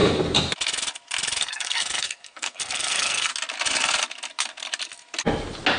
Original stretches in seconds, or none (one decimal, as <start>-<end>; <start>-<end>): 0.0-1.4; 3.3-5.8